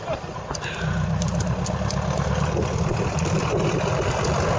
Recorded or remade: recorded